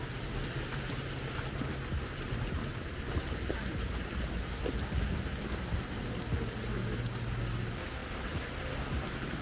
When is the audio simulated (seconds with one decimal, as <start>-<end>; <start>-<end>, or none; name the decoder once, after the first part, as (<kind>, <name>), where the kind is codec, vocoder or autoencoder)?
none